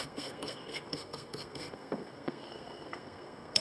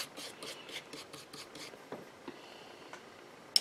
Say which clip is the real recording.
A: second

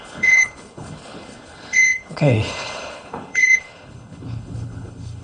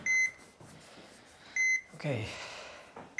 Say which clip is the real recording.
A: second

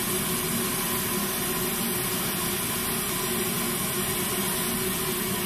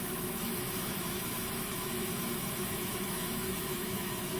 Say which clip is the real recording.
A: first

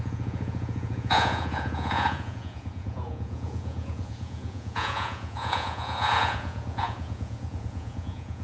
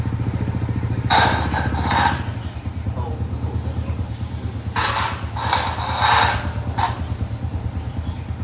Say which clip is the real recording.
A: second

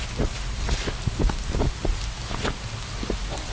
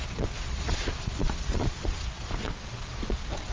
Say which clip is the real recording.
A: first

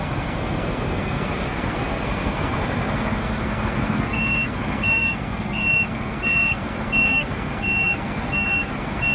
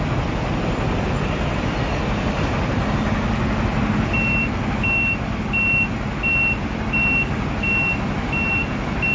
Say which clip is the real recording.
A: second